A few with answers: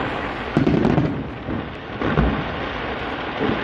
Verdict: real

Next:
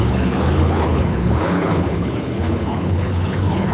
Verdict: fake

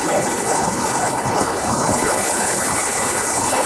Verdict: fake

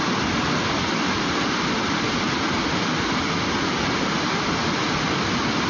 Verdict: real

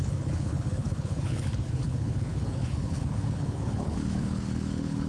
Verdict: fake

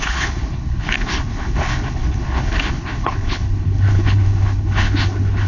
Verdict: fake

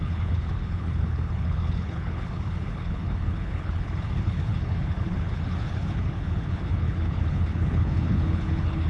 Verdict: fake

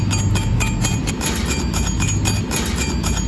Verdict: real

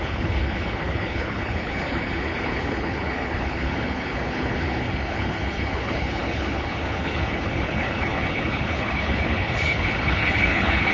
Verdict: fake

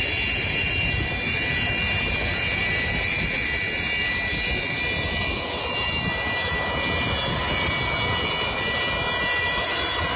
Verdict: real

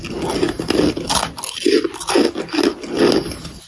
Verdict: real